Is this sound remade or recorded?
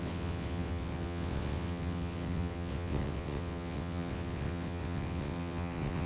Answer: remade